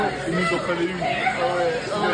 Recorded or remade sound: recorded